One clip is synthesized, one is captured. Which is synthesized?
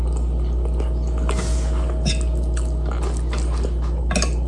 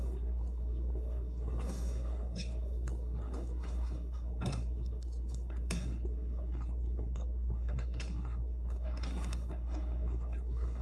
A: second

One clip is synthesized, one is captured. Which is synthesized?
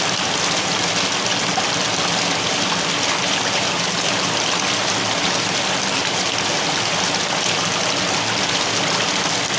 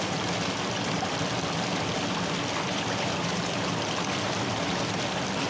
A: second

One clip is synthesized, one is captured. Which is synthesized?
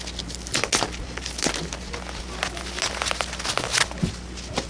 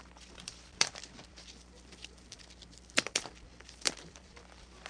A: second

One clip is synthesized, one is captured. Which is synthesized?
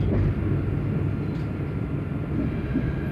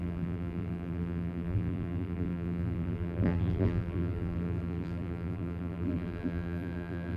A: second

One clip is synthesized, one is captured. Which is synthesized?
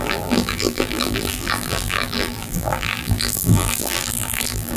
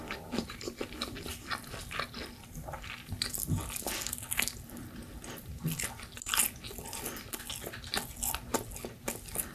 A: first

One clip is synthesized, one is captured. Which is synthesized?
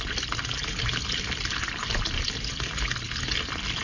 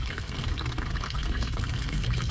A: second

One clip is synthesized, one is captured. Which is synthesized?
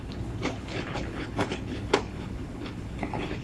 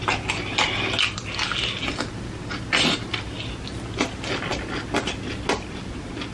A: first